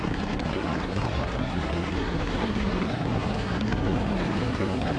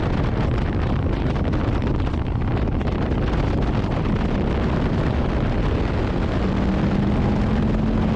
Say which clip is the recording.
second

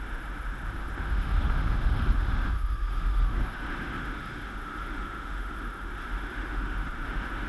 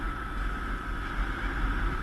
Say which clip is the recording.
second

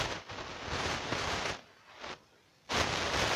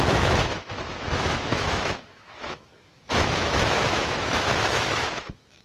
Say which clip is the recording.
first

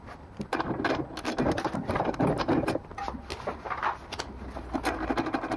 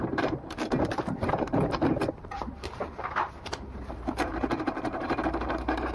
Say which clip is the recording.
first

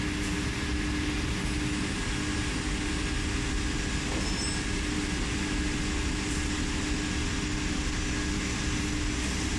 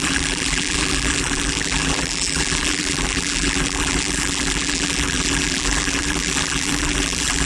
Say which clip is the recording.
first